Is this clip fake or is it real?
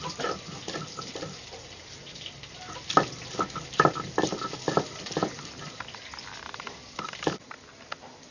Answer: real